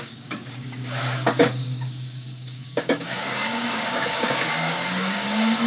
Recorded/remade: remade